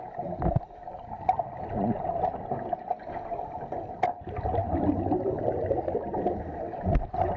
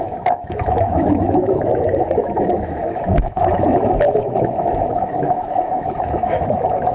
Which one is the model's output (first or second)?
second